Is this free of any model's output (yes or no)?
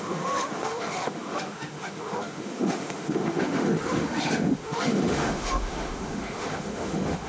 no